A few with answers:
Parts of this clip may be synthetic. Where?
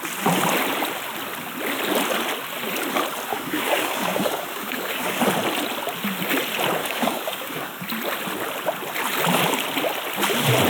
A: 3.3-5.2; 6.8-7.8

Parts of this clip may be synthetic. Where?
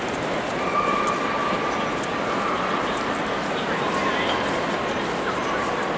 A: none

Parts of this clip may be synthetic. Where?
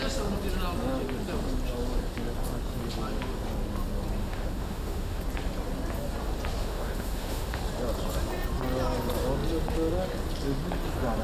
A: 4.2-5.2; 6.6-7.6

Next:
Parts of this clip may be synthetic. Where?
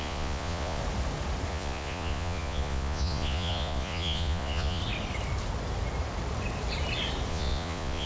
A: 0.0-0.8; 1.5-4.8; 7.3-8.1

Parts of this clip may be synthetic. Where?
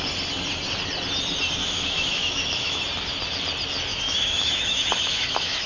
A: 1.6-2.8; 3.9-5.7